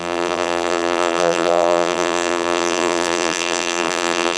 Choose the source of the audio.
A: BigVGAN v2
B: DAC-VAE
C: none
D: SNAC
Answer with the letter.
A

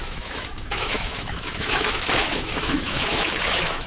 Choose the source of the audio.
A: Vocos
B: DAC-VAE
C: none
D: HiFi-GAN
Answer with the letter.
B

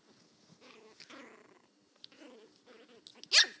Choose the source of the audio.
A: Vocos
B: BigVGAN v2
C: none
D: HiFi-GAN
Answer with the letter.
C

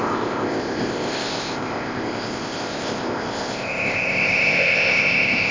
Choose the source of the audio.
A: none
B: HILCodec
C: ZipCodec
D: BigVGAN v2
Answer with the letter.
C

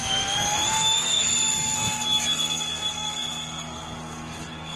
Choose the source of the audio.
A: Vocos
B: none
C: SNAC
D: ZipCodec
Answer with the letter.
C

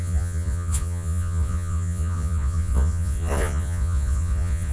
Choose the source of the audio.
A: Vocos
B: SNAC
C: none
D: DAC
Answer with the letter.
A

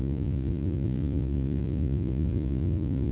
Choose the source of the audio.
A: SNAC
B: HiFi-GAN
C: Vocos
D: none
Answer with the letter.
C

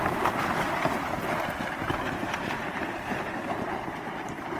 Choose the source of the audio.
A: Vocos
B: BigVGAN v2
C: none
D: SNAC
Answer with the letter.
C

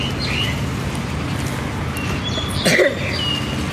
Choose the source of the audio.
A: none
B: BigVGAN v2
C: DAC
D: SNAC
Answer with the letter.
A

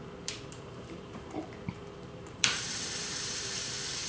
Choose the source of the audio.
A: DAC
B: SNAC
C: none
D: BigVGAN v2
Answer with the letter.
D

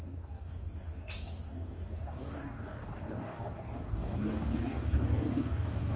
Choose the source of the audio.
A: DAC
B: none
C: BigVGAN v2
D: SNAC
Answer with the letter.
A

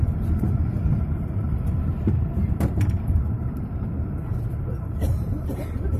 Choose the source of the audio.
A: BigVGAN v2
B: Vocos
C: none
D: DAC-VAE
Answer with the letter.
A